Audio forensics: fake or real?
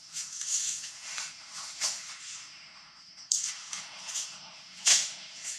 fake